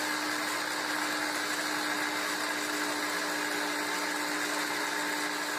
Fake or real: real